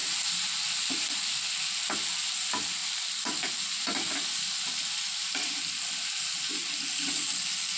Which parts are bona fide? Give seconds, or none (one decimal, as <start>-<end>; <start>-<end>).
0.0-7.8